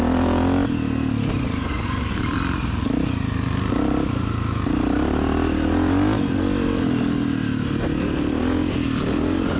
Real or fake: real